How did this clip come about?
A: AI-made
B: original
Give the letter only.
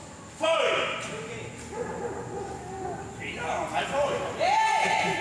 B